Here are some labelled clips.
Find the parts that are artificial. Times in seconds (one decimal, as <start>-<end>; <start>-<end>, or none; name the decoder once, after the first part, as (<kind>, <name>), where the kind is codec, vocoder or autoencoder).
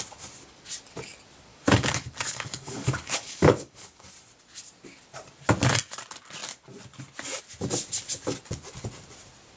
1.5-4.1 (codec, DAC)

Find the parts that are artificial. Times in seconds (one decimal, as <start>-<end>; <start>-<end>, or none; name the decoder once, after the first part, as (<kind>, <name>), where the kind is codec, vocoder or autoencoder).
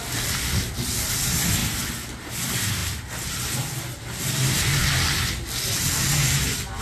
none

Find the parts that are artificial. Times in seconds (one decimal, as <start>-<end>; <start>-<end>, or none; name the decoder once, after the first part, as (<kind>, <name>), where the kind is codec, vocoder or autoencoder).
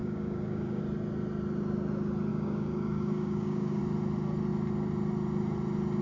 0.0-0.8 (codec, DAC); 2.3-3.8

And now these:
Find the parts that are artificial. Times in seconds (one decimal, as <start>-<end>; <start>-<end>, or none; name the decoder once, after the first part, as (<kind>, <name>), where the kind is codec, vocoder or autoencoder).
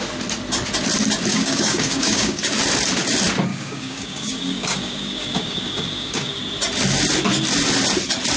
1.3-2.4 (codec, DAC); 3.5-6.4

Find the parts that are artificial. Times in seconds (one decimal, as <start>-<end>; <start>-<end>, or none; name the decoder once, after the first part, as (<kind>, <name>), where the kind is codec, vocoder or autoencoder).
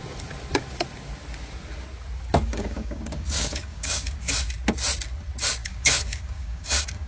2.4-4.3 (codec, DAC); 5.6-7.1